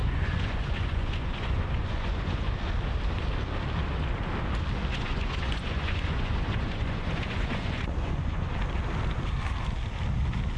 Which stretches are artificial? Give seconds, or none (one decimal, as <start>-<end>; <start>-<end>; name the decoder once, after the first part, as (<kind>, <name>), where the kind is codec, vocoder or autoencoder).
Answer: 0.0-2.5 (vocoder, Vocos); 4.9-8.5